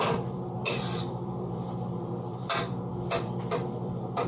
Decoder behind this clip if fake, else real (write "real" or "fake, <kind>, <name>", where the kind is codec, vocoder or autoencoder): fake, vocoder, BigVGAN v2